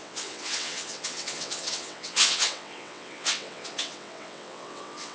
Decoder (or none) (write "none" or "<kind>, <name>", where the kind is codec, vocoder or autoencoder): vocoder, WaveNeXt